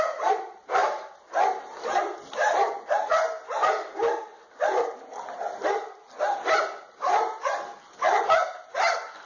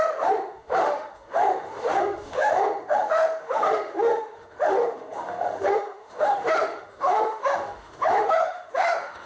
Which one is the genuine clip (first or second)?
first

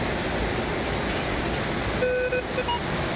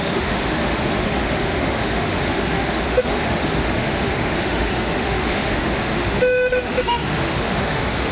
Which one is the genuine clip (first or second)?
first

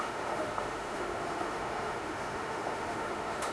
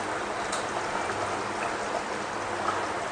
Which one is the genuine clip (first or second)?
second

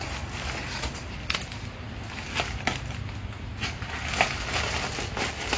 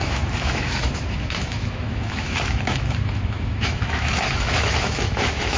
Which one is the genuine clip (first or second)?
first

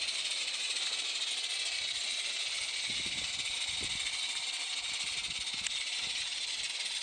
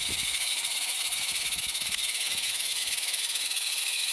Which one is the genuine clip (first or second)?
first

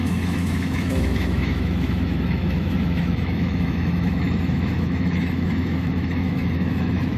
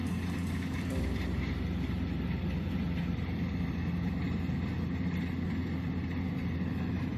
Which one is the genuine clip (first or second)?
second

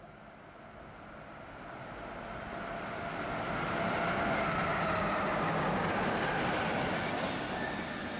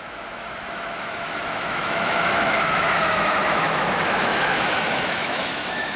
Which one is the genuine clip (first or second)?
first